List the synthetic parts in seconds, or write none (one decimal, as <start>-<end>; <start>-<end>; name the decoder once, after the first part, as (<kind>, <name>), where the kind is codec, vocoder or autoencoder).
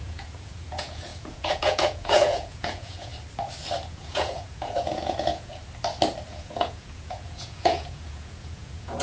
0.0-3.1 (vocoder, Vocos); 3.9-5.6; 6.3-9.0